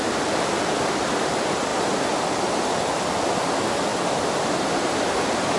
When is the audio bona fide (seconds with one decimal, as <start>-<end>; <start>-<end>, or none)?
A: none